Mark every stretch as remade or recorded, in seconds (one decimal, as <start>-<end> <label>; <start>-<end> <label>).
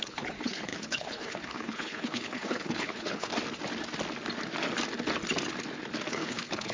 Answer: 0.0-3.3 remade; 3.3-6.1 recorded; 6.1-6.7 remade